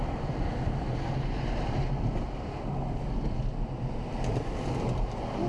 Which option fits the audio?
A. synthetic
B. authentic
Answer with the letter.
B